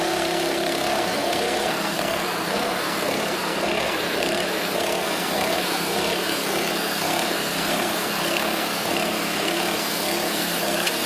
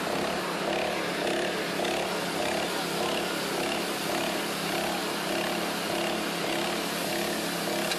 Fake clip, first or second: first